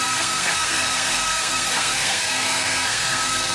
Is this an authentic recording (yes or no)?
no